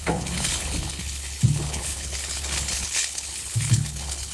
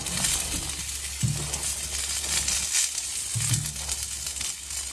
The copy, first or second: first